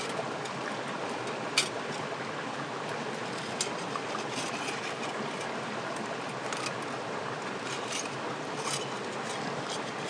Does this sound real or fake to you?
real